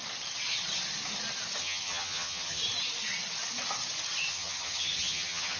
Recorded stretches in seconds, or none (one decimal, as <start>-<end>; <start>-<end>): 0.0-1.6; 2.6-4.3